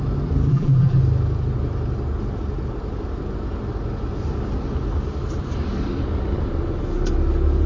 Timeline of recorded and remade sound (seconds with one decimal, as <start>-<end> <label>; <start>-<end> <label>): 0.0-0.5 recorded; 0.5-1.0 remade; 1.0-7.7 recorded